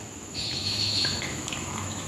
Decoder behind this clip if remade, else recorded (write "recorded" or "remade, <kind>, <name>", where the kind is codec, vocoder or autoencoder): remade, autoencoder, DAC-VAE